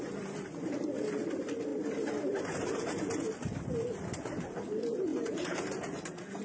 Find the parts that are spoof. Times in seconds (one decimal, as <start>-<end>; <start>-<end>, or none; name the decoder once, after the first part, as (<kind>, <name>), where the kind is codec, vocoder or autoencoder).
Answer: 5.1-6.0 (vocoder, BigVGAN v2)